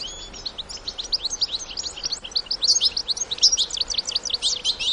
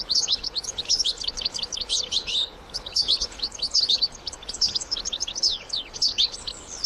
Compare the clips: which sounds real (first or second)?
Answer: first